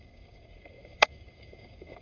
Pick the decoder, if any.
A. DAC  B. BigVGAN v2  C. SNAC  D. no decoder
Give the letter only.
A